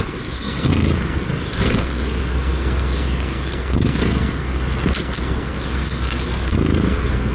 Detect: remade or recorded remade